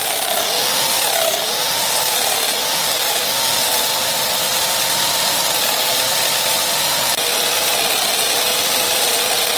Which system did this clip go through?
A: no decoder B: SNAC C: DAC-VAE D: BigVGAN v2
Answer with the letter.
A